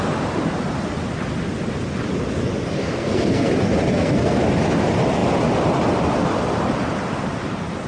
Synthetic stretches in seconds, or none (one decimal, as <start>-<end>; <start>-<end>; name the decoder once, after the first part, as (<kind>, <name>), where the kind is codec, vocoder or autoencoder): 2.8-3.5 (codec, SNAC); 3.9-4.4